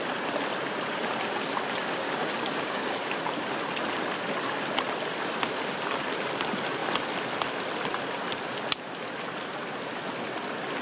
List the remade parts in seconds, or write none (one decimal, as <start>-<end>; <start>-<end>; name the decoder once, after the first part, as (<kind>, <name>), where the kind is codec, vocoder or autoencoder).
1.8-3.1 (codec, DAC)